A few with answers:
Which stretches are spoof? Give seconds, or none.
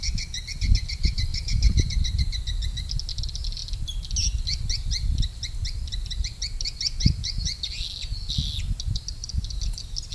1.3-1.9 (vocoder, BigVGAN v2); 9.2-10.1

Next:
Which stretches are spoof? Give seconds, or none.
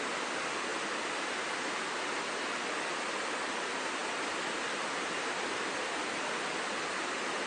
none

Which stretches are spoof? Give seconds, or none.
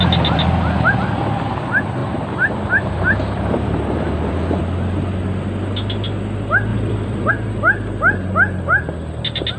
2.0-4.6 (vocoder, BigVGAN v2); 6.7-7.3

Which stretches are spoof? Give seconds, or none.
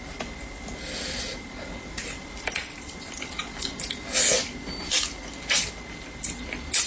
1.3-5.4 (vocoder, BigVGAN v2)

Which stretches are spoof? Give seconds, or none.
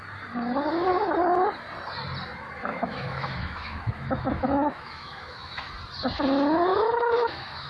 2.7-5.7 (autoencoder, DAC-VAE); 6.7-7.7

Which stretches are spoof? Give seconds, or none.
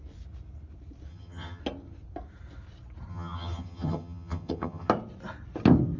1.1-1.6 (vocoder, HiFi-GAN); 3.1-4.9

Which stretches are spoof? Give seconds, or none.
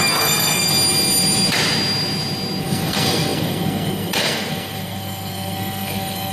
0.0-0.7 (codec, SNAC); 2.6-6.3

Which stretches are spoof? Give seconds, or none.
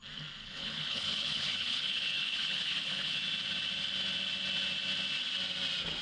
0.4-3.2 (codec, HILCodec)